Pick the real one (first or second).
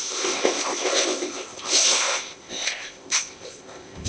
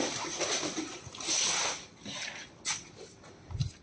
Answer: second